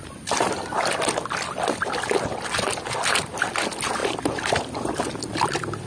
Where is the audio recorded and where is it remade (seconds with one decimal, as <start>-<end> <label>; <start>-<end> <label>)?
0.0-5.9 recorded